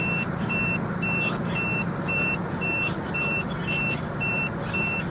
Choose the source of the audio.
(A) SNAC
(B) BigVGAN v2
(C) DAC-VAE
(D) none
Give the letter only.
D